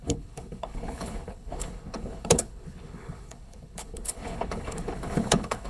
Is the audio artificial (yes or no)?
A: yes